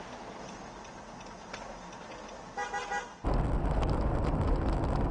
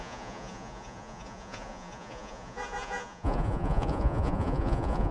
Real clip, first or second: first